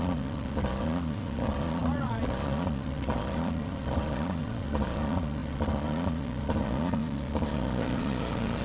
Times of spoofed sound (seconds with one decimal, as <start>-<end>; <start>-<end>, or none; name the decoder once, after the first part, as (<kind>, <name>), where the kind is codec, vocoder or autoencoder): 0.0-8.6 (vocoder, Vocos)

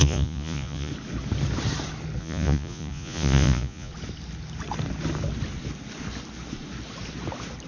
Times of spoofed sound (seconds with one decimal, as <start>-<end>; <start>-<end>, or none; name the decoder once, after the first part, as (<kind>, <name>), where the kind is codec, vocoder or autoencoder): 0.0-0.9 (vocoder, Vocos); 2.2-3.9